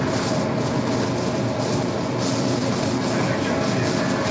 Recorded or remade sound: recorded